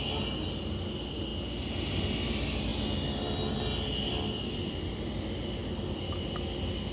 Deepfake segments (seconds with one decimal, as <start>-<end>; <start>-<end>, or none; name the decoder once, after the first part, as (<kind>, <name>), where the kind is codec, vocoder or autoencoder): none